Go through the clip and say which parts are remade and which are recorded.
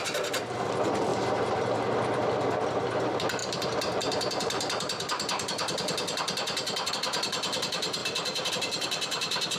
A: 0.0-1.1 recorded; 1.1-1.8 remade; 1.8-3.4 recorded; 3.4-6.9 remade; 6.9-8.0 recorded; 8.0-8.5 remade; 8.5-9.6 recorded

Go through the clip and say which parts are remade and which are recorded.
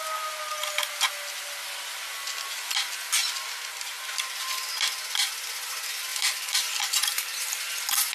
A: 0.0-6.1 recorded; 6.1-7.6 remade; 7.6-8.1 recorded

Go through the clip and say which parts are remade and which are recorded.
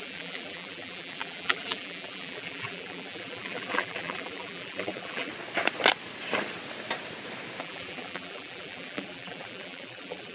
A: 0.0-5.3 remade; 5.3-7.6 recorded; 7.6-10.3 remade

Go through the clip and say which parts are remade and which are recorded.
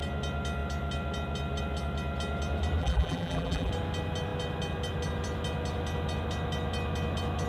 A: 0.0-2.8 recorded; 2.8-3.7 remade; 3.7-7.5 recorded